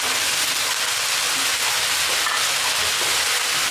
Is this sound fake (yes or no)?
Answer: no